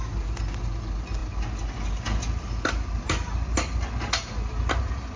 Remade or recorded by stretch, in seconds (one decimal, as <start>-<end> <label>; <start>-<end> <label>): 0.0-5.2 recorded